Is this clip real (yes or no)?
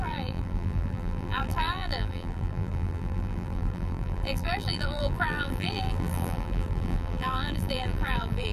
no